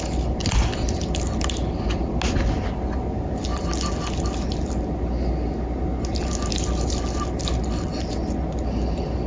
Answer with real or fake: real